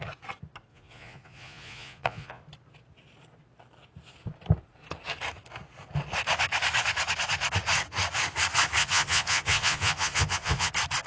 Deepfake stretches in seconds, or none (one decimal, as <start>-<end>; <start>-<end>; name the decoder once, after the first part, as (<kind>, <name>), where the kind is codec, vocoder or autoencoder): 0.7-2.4 (vocoder, Vocos); 8.8-10.7